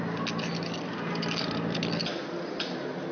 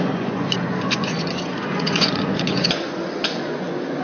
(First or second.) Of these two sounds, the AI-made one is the second